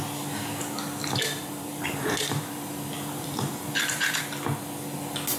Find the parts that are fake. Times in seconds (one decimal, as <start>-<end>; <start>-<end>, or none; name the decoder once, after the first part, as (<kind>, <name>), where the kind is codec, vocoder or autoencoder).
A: 1.0-4.2 (vocoder, BigVGAN v2)